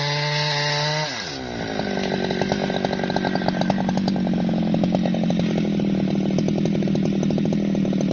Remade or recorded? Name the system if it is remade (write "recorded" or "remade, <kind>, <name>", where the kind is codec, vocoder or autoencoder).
recorded